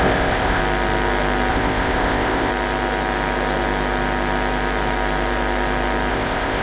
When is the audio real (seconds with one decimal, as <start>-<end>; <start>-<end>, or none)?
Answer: 0.6-1.5; 2.5-6.1